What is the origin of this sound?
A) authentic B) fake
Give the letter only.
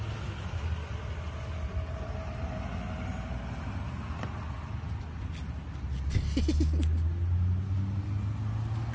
A